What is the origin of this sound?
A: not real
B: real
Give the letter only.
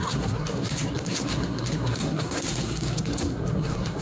A